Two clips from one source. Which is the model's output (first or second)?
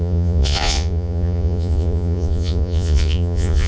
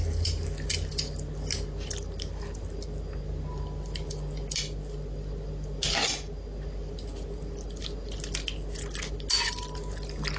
first